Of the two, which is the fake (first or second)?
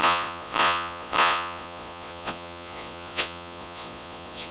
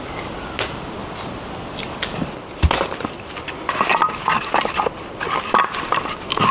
first